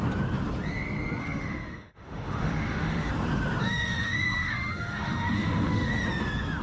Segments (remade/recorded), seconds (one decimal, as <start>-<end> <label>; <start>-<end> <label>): 0.0-1.2 recorded; 1.2-3.1 remade; 3.1-3.6 recorded; 3.6-5.9 remade; 5.9-6.6 recorded